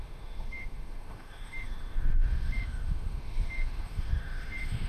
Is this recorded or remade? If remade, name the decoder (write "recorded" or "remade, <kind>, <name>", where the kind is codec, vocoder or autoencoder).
remade, autoencoder, DAC-VAE